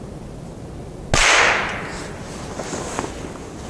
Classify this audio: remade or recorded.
recorded